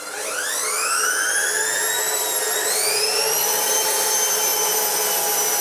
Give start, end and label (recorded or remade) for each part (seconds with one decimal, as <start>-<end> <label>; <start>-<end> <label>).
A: 0.0-5.6 recorded